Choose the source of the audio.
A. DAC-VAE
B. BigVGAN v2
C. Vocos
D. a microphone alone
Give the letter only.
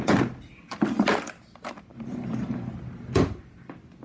D